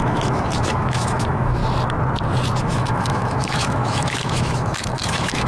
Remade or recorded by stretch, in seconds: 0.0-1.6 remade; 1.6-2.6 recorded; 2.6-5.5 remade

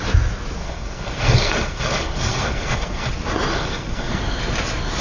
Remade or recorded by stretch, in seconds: 0.0-0.6 recorded; 0.6-3.1 remade; 3.1-3.5 recorded; 3.5-4.2 remade; 4.2-5.0 recorded